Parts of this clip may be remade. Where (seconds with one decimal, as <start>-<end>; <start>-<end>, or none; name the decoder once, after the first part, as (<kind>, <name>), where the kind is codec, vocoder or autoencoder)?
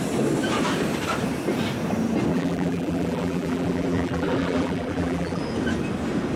2.3-5.4 (vocoder, BigVGAN v2)